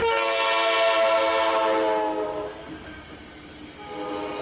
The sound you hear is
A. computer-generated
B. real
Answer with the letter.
B